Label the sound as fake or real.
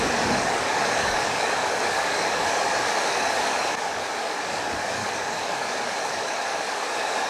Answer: fake